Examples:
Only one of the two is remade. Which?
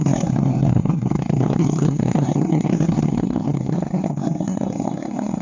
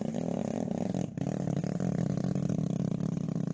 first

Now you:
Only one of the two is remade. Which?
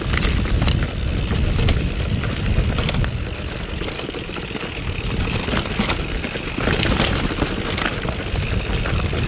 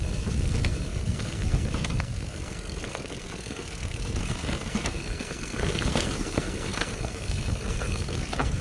second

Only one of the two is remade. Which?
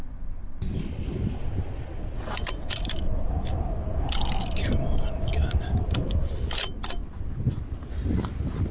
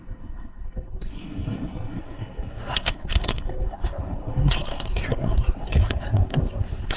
second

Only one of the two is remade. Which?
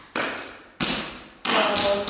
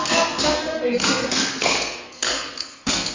second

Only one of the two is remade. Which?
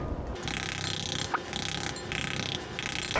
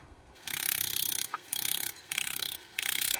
second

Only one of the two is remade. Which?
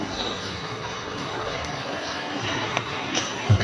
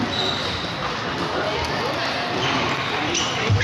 first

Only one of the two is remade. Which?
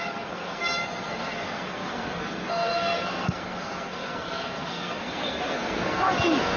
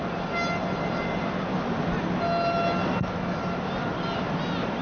first